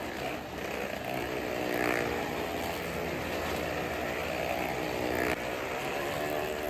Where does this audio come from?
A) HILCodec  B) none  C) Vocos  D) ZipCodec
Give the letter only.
B